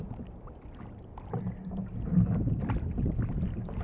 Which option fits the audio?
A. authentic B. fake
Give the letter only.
A